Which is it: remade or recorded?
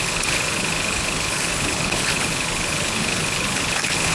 remade